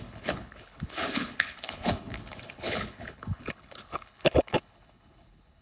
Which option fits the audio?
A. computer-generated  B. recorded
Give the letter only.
A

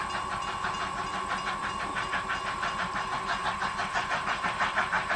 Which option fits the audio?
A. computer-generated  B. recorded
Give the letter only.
B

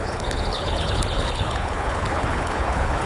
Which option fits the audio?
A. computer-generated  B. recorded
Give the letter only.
A